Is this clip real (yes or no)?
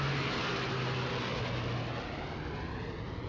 yes